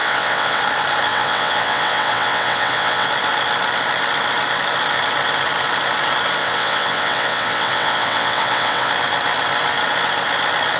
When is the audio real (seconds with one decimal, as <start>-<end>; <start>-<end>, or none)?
0.6-1.1; 3.1-6.4; 8.9-10.8